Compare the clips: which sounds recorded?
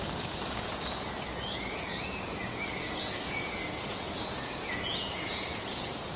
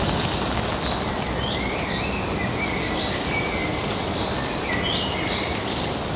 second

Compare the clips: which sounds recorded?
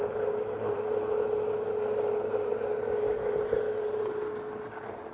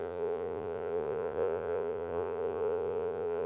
first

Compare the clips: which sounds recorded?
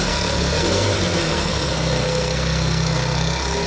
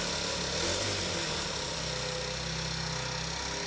second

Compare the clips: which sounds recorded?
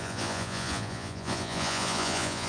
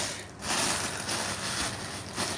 second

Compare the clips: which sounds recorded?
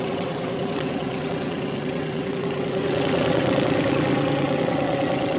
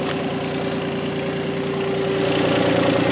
second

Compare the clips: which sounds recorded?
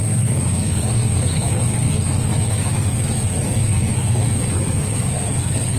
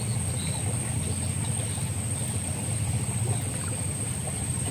second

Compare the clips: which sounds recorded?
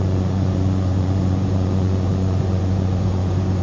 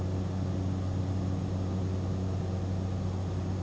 second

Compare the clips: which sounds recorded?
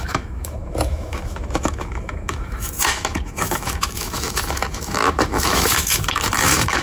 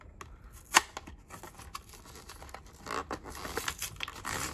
second